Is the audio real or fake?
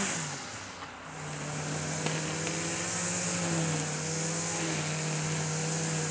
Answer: real